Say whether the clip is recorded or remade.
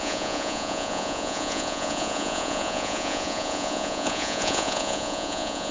remade